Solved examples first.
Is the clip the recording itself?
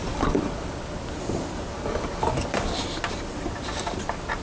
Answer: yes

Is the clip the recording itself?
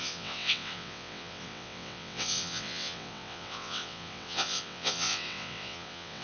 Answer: no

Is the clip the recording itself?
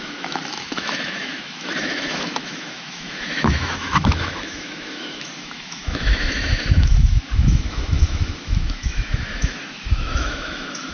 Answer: no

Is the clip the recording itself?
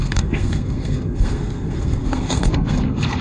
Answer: no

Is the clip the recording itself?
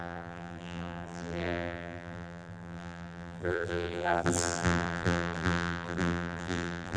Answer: no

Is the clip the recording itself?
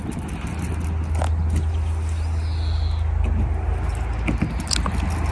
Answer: yes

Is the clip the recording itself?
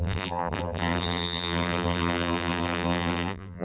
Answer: no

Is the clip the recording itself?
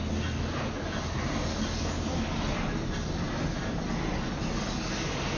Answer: yes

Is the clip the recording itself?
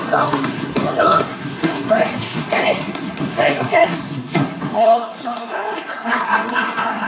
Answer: no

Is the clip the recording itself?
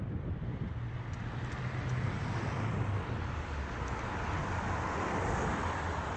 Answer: yes